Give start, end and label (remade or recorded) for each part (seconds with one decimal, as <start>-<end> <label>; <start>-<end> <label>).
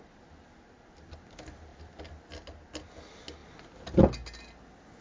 0.0-5.0 recorded